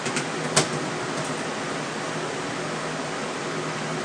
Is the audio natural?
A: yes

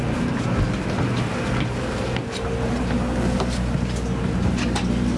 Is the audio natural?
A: yes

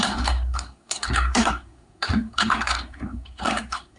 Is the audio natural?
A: no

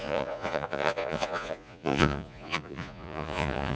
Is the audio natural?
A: no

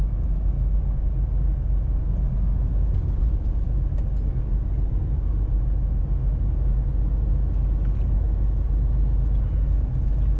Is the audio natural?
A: yes